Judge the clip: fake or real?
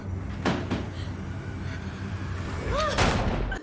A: real